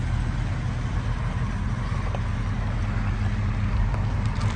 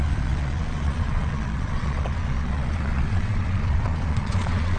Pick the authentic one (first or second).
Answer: first